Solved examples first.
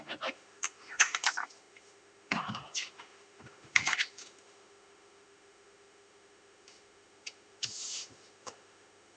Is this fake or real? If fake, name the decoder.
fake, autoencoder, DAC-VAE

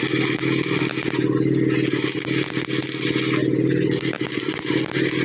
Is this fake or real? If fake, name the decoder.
real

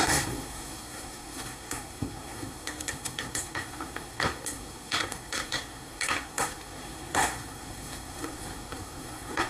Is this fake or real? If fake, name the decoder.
fake, codec, SNAC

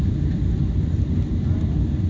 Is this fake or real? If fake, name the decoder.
real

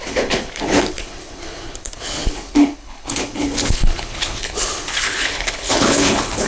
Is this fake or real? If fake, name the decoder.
fake, codec, HILCodec